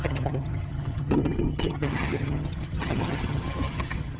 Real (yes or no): no